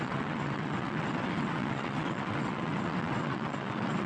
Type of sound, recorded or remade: remade